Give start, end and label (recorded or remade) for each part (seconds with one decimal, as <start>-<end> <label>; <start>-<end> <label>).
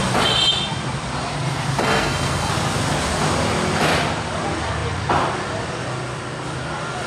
0.0-1.8 recorded; 1.8-2.5 remade; 2.5-7.1 recorded